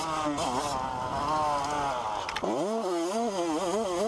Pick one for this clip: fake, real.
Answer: real